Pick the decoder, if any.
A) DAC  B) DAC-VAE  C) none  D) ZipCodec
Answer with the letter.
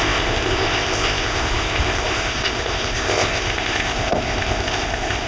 D